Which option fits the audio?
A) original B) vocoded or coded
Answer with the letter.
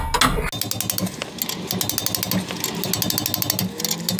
A